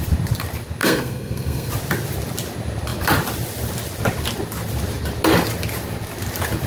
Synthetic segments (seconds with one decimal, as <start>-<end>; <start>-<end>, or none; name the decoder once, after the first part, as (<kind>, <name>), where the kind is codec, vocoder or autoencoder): 0.8-1.7 (codec, SNAC)